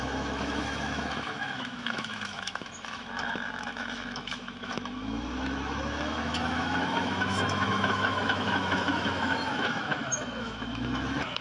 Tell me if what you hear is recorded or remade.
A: remade